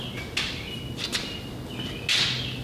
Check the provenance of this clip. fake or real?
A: real